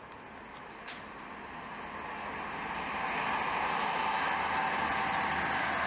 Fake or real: real